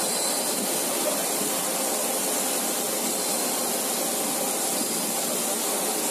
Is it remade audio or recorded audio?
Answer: recorded